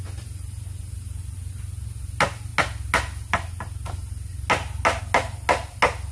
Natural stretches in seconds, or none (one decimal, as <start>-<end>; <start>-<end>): 0.0-6.1